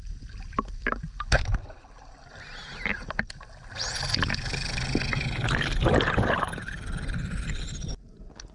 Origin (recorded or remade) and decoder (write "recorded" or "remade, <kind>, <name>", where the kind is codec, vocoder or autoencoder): recorded